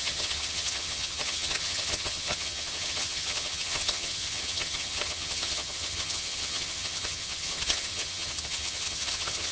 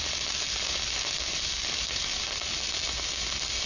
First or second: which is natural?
second